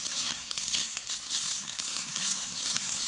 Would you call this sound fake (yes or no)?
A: yes